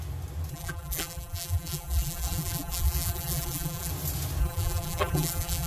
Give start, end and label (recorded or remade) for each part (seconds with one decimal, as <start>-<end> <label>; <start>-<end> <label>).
0.0-0.5 recorded; 0.5-3.9 remade; 3.9-4.4 recorded; 4.4-5.7 remade